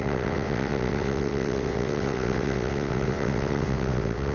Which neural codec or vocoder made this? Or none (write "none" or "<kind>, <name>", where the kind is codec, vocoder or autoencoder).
vocoder, WaveNeXt